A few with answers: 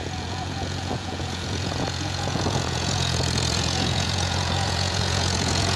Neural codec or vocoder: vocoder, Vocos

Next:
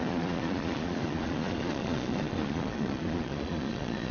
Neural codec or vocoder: vocoder, Vocos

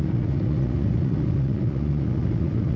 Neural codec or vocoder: vocoder, Vocos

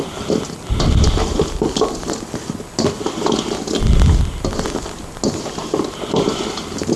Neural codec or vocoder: none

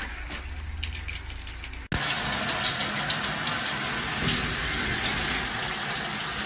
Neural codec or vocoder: none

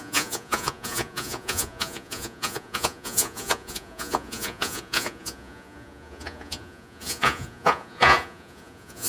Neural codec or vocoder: vocoder, Vocos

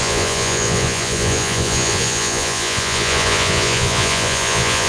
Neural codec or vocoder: vocoder, Vocos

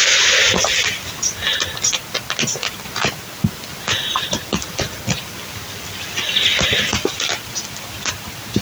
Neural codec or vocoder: none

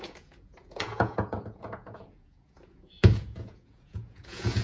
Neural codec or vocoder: vocoder, Vocos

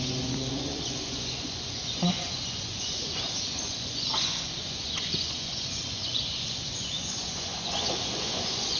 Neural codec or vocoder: vocoder, Vocos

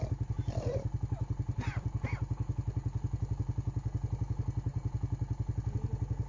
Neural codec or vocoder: none